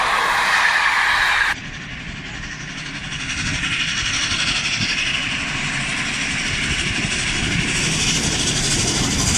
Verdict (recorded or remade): recorded